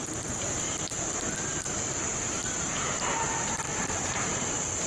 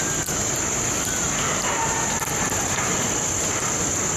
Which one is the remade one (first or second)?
first